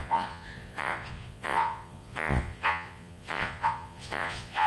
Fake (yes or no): yes